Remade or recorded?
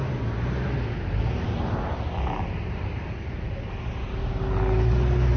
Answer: recorded